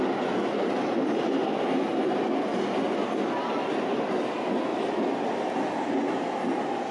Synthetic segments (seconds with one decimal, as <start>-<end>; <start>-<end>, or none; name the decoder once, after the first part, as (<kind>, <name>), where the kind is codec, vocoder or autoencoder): none